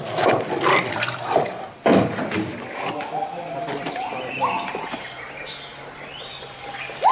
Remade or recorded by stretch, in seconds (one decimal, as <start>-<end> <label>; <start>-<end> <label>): 0.0-7.1 recorded